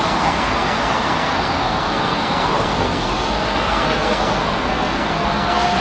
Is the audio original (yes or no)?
no